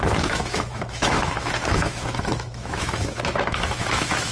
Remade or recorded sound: remade